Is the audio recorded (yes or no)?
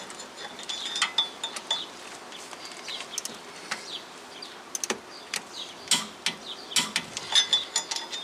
yes